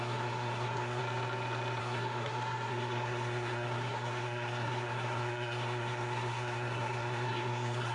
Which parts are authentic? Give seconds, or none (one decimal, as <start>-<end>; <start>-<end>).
1.0-1.8